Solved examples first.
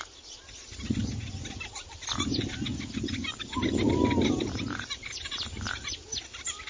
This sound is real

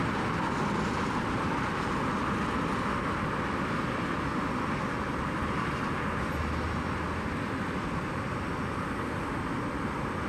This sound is real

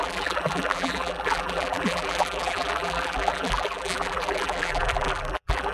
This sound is fake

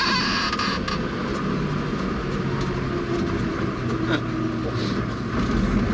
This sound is real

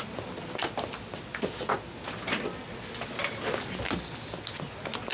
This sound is real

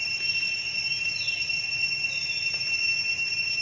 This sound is real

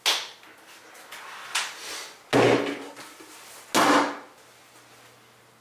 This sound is real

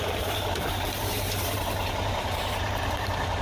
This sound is fake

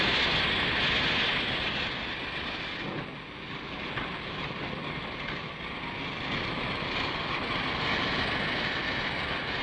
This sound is real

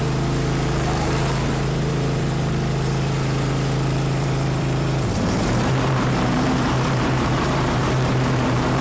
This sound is fake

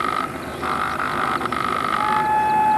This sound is real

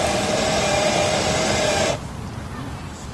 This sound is real